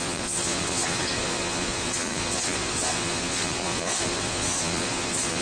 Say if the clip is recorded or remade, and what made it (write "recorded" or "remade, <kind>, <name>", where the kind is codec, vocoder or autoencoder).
remade, vocoder, Vocos